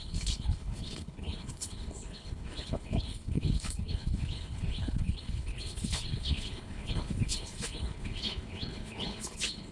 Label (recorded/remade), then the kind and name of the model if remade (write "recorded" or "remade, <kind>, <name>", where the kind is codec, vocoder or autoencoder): remade, codec, HILCodec